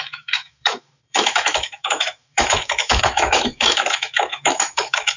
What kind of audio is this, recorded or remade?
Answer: remade